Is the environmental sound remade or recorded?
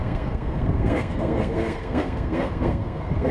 remade